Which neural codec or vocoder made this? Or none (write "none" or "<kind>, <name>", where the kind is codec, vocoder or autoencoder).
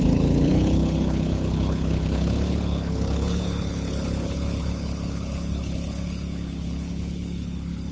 codec, HILCodec